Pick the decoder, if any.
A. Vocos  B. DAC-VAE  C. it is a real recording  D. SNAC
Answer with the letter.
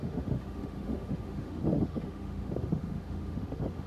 B